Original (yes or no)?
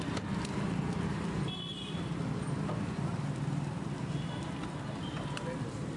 yes